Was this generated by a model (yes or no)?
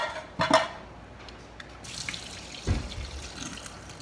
no